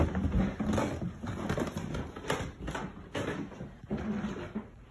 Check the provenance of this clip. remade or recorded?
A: recorded